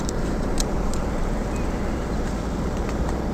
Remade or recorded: remade